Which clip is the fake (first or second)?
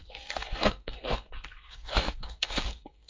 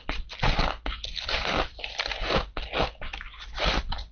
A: first